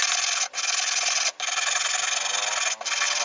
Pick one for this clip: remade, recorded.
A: recorded